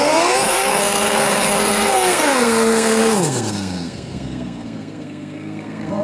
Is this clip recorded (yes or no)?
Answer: no